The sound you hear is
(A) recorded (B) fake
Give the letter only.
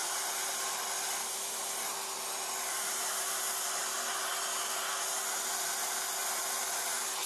A